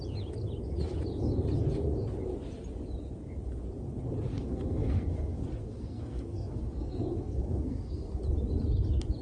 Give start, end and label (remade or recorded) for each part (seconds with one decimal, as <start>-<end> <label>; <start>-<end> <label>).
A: 0.0-4.3 recorded; 4.3-8.2 remade; 8.2-9.2 recorded